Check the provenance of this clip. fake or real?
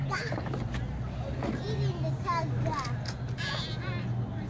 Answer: real